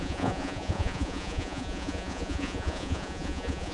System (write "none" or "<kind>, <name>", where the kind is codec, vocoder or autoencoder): vocoder, Vocos